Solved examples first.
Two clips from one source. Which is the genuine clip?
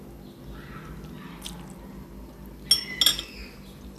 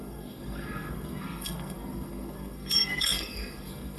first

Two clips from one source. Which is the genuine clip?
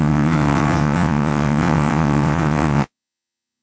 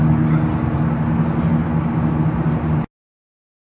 second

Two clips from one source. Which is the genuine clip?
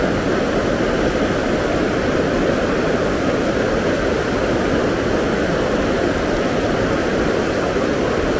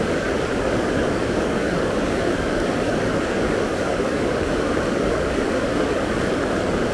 first